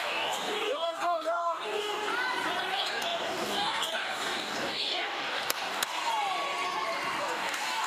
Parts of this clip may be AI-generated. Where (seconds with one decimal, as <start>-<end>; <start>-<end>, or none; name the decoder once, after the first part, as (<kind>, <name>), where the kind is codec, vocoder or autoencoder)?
0.0-2.1 (codec, DAC); 2.7-6.1; 7.2-7.9